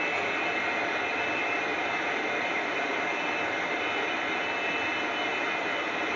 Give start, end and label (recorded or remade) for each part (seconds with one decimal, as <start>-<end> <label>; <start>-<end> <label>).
0.0-1.7 recorded; 1.7-4.4 remade; 4.4-6.2 recorded